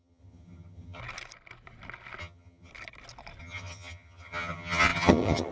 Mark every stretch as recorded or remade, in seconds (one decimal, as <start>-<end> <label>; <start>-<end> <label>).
0.0-1.0 remade; 1.0-2.2 recorded; 2.2-2.7 remade; 2.7-3.4 recorded; 3.4-5.5 remade

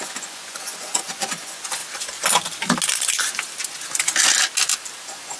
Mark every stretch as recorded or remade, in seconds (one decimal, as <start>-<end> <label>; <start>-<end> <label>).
0.0-1.8 remade; 1.8-5.0 recorded; 5.0-5.4 remade

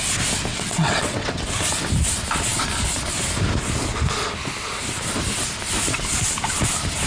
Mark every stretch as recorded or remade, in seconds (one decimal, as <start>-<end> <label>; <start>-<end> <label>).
0.0-0.5 recorded; 0.5-1.4 remade; 1.4-7.1 recorded